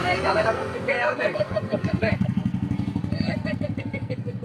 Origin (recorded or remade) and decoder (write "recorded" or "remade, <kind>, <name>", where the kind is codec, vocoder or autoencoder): remade, codec, SNAC